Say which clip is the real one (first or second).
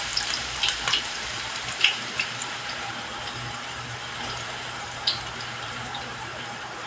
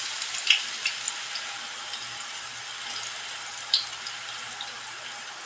second